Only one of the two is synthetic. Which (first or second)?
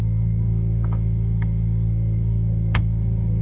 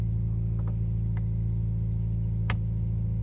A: first